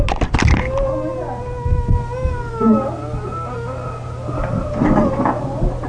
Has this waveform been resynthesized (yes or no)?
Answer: no